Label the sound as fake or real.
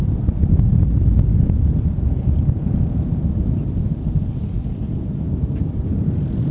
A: real